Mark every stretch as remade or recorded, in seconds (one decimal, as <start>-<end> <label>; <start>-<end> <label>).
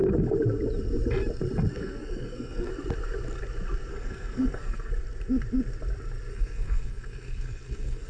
0.0-1.7 recorded; 1.7-2.7 remade; 2.7-3.9 recorded; 3.9-4.9 remade; 4.9-6.3 recorded; 6.3-8.1 remade